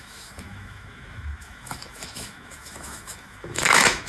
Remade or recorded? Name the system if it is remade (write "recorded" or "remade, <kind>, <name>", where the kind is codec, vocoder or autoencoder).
remade, autoencoder, DAC-VAE